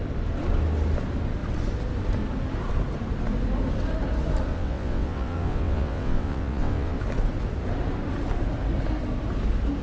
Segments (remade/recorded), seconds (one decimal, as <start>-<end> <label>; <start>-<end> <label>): 0.0-4.5 recorded; 4.5-7.0 remade; 7.0-9.8 recorded